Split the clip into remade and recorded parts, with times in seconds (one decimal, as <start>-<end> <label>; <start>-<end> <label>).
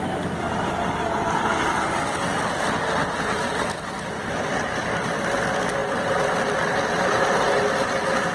0.0-8.3 recorded